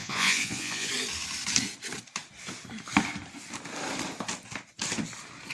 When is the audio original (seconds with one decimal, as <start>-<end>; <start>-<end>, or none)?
0.9-5.5